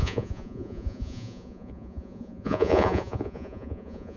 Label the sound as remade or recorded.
remade